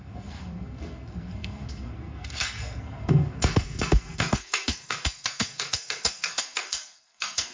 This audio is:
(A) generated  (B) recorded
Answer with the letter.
A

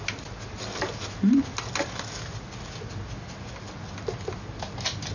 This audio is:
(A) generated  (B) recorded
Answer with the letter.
B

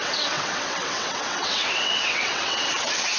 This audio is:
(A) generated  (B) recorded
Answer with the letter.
A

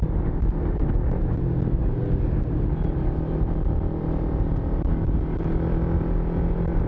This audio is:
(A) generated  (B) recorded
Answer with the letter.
B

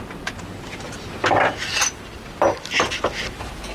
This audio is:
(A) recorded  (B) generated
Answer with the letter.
A